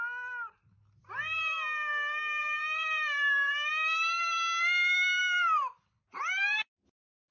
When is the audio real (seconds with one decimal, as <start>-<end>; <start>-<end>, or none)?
0.0-2.4; 3.7-7.3